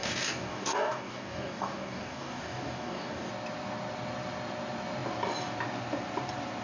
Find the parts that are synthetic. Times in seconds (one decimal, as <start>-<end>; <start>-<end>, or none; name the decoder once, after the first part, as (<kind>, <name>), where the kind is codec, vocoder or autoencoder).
0.0-3.3 (codec, DAC)